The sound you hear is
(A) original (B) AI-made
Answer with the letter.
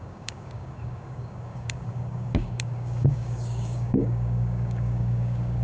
B